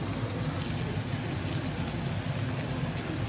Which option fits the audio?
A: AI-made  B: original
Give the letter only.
B